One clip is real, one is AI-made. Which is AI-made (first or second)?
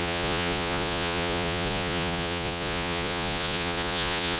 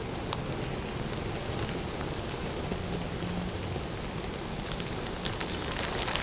first